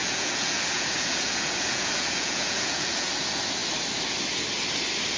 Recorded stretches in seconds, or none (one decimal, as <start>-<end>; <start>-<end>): 3.1-5.2